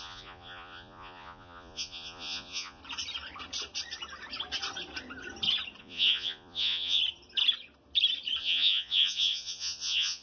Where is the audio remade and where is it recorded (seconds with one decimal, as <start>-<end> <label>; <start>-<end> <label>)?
0.0-2.8 remade; 2.8-5.8 recorded; 5.8-7.0 remade; 7.0-8.4 recorded; 8.4-10.2 remade